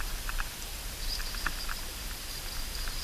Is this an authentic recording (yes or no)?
no